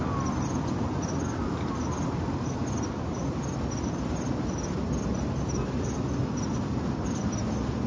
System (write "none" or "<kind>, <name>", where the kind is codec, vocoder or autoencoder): none